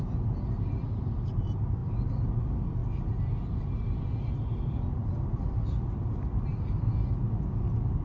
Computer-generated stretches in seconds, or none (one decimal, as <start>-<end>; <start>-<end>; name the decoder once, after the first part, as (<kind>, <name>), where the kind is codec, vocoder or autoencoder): none